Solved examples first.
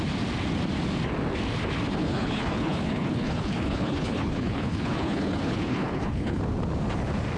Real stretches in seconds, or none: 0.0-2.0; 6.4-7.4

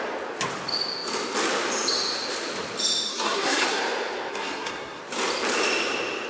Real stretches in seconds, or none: 0.0-3.1; 3.8-4.3; 5.0-6.3

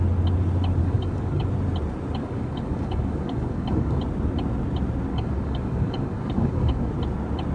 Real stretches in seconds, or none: 0.0-0.8; 1.4-2.2; 4.0-5.1; 6.9-7.5

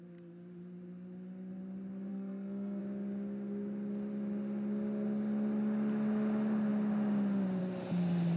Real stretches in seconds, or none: 0.0-2.1; 2.8-8.4

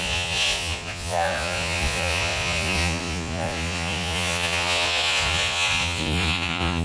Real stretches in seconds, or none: none

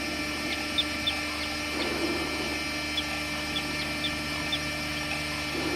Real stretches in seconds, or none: 2.5-3.0